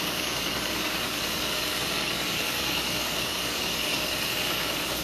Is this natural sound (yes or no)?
no